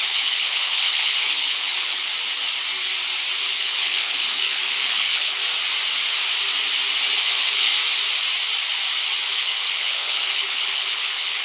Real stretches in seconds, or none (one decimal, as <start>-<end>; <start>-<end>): 2.1-3.5; 5.4-7.2; 7.7-9.3